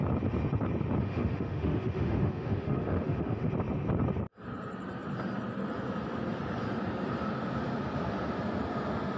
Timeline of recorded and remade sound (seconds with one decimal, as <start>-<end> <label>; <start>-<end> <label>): 0.0-1.0 recorded; 1.0-3.5 remade; 3.5-9.2 recorded